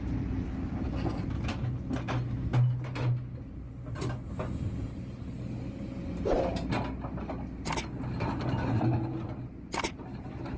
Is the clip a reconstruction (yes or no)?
no